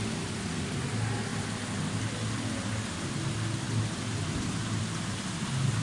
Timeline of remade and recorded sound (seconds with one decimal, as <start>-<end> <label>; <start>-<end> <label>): 0.0-5.8 recorded